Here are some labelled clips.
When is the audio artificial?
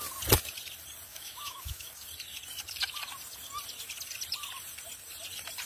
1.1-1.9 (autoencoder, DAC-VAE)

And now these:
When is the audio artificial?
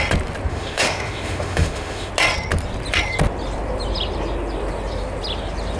0.5-2.1 (autoencoder, DAC-VAE)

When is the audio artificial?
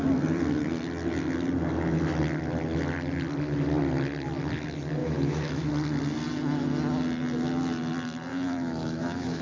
5.0-5.7 (autoencoder, DAC-VAE); 8.3-9.4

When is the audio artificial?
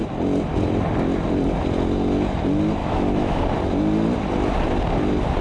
2.8-3.4 (autoencoder, DAC-VAE)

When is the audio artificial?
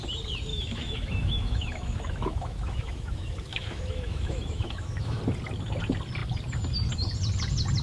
0.5-5.2 (autoencoder, DAC-VAE)